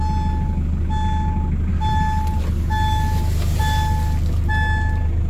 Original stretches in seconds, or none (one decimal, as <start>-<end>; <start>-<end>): 0.0-5.3